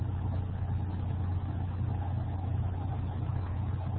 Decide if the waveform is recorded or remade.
recorded